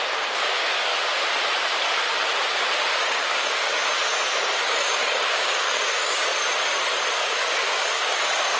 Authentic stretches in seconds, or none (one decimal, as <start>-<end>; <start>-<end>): 0.9-3.0; 3.7-4.4; 6.3-7.1